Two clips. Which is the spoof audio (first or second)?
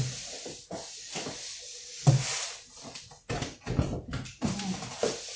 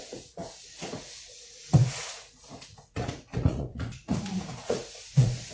second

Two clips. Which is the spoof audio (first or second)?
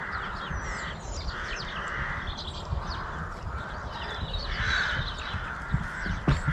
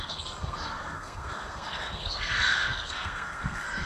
second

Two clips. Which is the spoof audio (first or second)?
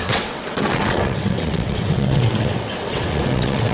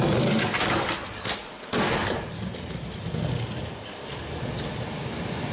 first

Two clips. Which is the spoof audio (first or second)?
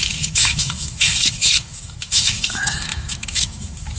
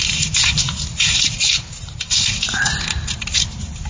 first